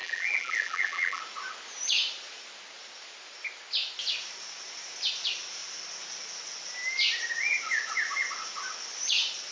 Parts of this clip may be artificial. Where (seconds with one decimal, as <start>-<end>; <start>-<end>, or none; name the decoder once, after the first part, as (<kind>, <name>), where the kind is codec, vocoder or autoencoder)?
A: 0.0-1.2 (vocoder, BigVGAN v2)